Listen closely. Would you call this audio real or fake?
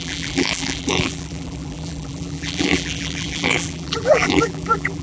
fake